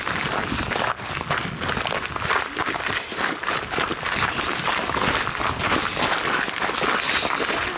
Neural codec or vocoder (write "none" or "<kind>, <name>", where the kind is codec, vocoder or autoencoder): none